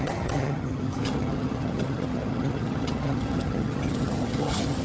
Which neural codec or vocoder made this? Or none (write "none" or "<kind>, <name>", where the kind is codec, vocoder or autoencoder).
vocoder, HiFi-GAN